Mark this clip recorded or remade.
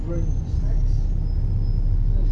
recorded